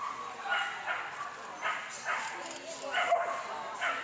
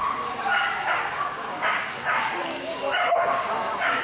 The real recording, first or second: first